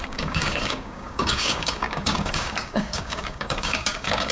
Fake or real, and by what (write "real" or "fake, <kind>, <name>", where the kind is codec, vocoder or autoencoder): fake, codec, DAC